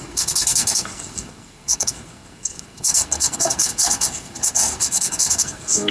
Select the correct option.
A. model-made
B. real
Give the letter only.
A